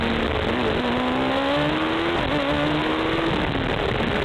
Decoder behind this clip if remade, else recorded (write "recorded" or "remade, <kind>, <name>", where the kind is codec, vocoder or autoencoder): recorded